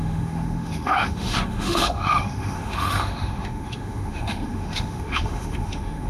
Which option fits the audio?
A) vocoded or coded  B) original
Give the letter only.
A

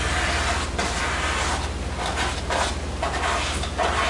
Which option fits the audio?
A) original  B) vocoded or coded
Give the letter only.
A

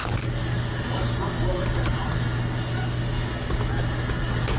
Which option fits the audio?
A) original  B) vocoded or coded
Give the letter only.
A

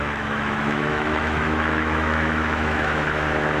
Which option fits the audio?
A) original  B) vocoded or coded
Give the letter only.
B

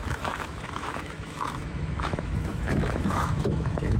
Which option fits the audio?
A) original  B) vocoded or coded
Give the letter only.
B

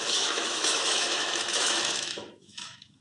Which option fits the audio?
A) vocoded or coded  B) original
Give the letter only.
A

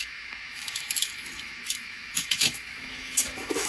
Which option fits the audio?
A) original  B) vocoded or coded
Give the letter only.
B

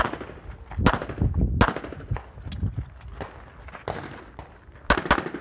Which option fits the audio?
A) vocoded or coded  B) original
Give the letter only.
B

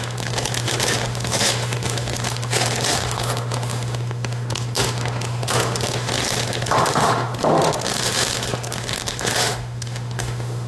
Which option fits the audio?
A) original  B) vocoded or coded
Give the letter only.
B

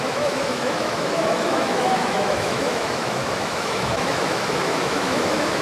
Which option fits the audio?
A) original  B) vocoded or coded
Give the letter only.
B